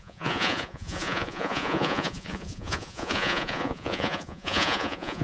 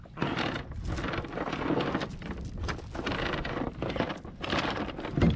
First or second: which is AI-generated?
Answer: first